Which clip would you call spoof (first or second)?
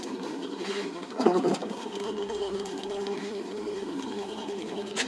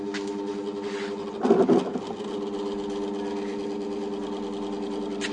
first